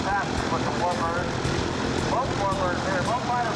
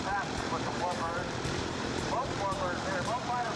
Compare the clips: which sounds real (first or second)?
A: first